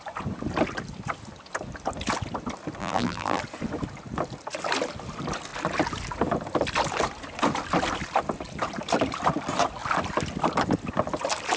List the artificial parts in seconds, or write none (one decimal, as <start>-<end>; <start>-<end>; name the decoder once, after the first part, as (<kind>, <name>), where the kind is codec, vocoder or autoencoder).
2.8-3.4 (vocoder, BigVGAN v2)